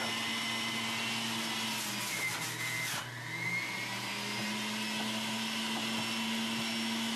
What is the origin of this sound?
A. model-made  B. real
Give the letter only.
B